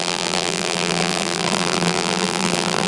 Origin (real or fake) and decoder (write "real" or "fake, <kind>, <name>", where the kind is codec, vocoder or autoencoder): fake, vocoder, BigVGAN v2